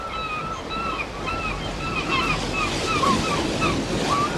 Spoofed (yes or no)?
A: no